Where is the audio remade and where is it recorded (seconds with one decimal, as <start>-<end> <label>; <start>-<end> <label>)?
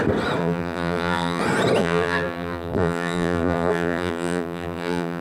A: 0.0-0.4 recorded; 0.4-1.4 remade; 1.4-1.8 recorded; 1.8-5.2 remade